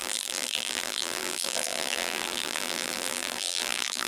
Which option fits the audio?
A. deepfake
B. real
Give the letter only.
A